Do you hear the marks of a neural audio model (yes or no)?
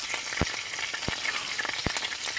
no